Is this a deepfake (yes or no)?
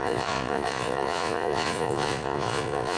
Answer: yes